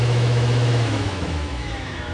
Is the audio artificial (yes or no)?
yes